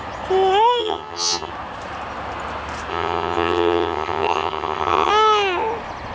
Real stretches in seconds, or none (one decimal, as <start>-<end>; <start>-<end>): 0.0-0.8; 1.5-2.9; 5.1-6.1